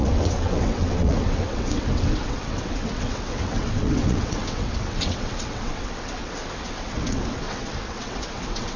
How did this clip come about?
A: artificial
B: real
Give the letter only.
A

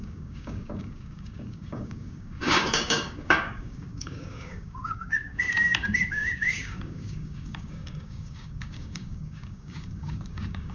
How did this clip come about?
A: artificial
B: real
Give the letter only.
A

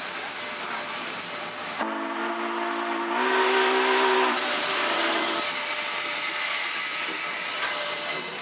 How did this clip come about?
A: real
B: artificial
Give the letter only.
B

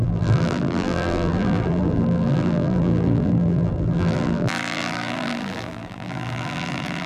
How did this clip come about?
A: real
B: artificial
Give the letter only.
B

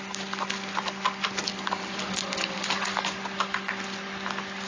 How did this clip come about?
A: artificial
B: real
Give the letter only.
B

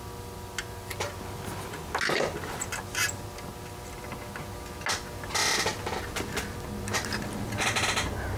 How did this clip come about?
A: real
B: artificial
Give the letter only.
A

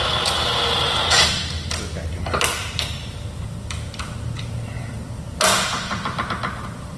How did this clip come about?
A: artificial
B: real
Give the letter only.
B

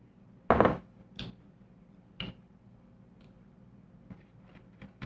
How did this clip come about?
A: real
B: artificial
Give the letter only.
A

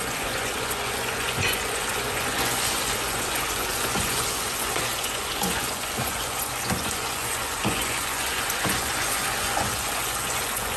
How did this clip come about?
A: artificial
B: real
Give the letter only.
A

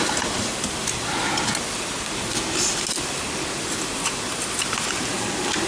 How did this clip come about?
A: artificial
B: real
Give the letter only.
B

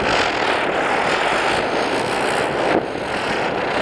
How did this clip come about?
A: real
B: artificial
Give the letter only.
A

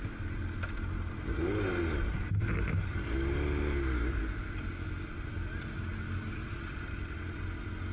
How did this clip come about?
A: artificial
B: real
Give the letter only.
B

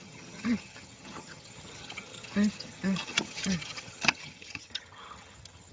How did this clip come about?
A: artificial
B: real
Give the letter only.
A